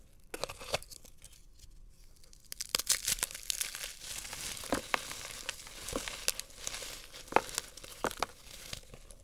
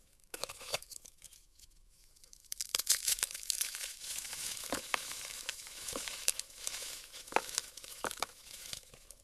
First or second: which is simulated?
second